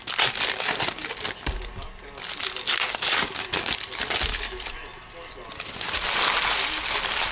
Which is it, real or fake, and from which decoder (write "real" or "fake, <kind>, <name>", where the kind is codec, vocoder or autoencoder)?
real